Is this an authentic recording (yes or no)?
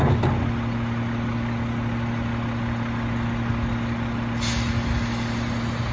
yes